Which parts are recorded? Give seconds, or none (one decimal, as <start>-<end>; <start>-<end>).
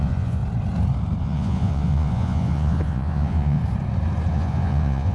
0.4-1.2; 3.6-4.3